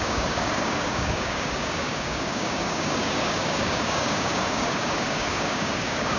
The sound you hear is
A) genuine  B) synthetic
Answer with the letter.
B